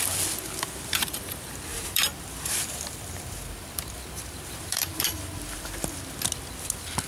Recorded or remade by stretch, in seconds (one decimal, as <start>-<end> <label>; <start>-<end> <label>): 0.0-1.7 recorded; 1.7-6.0 remade; 6.0-7.1 recorded

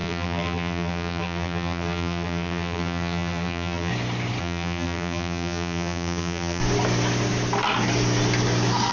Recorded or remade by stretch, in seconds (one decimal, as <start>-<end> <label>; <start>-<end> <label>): 0.0-3.9 remade; 3.9-4.4 recorded; 4.4-6.6 remade; 6.6-8.9 recorded